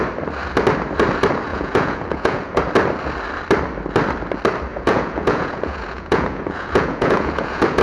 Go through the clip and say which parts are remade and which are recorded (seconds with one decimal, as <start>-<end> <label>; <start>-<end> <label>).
0.0-1.5 recorded; 1.5-2.6 remade; 2.6-4.7 recorded; 4.7-7.8 remade